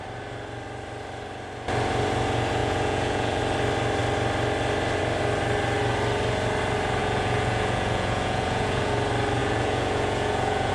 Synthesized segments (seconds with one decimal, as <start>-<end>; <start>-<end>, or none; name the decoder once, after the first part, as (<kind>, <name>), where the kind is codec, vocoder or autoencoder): 2.6-3.4 (vocoder, Vocos); 7.0-8.9; 9.4-10.7